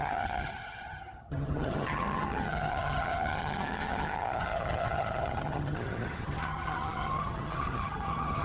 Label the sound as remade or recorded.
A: remade